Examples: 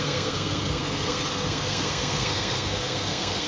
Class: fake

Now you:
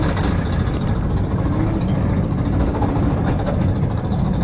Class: real